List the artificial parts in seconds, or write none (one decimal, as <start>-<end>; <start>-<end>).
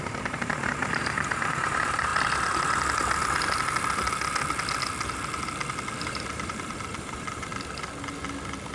0.0-2.1; 6.0-7.5